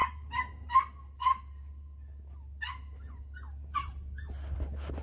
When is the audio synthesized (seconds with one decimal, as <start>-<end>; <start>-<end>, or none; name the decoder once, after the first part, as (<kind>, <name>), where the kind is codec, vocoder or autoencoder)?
none